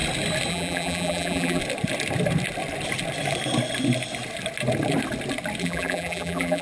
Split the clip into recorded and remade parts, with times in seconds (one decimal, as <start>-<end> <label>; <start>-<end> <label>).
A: 0.0-0.5 recorded; 0.5-1.6 remade; 1.6-5.6 recorded; 5.6-6.6 remade